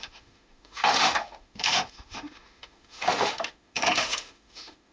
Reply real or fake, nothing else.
fake